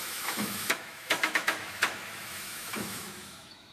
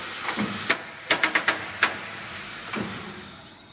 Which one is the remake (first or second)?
first